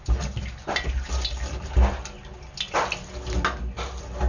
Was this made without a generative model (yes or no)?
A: yes